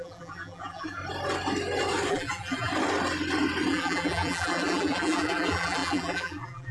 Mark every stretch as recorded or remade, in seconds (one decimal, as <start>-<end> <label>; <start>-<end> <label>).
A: 0.0-1.0 remade; 1.0-2.1 recorded; 2.1-2.7 remade; 2.7-3.7 recorded; 3.7-6.7 remade